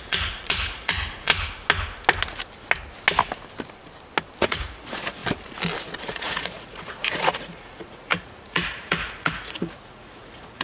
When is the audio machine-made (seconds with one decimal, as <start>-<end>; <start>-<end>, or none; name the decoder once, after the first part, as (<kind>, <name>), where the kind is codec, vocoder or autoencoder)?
0.0-1.3 (vocoder, Vocos); 4.4-5.2; 6.0-10.6